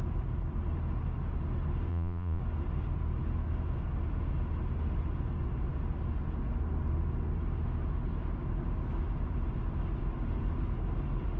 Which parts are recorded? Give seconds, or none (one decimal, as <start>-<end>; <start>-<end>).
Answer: 0.0-1.9; 2.4-11.4